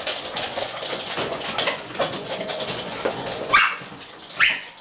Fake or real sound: fake